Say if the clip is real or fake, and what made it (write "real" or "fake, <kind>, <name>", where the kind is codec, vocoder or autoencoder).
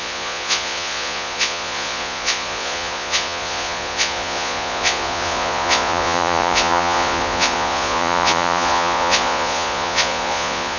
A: fake, vocoder, Vocos